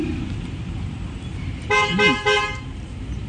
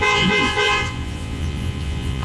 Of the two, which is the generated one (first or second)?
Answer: second